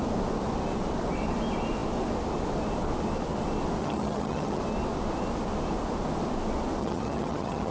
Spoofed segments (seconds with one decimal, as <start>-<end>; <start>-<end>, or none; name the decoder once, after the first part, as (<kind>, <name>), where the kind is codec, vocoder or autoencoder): 3.8-4.6 (vocoder, HiFi-GAN); 6.8-7.7